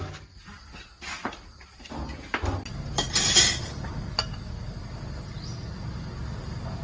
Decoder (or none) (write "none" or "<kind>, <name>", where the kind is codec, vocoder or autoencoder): none